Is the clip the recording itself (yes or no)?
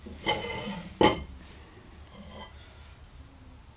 no